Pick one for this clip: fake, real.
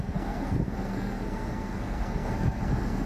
fake